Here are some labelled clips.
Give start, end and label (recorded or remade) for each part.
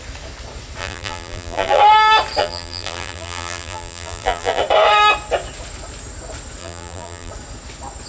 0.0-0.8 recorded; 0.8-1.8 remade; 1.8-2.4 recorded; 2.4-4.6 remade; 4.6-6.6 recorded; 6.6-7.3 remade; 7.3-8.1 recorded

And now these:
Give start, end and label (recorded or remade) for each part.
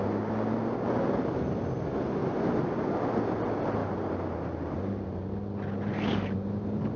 0.0-3.8 recorded; 3.8-4.3 remade; 4.3-7.0 recorded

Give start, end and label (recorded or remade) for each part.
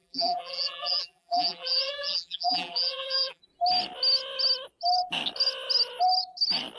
0.0-3.4 remade; 3.4-6.8 recorded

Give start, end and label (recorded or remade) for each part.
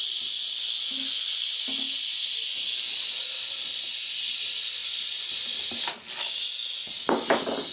0.0-7.7 recorded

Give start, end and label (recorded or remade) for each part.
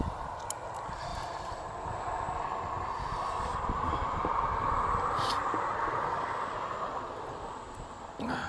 0.0-1.1 recorded; 1.1-1.7 remade; 1.7-8.5 recorded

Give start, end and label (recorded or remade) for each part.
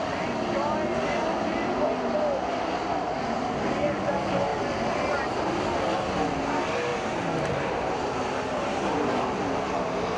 0.0-6.9 recorded; 6.9-8.8 remade; 8.8-10.2 recorded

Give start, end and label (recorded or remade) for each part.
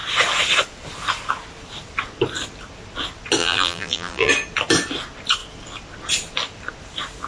0.0-3.4 recorded; 3.4-4.3 remade; 4.3-7.3 recorded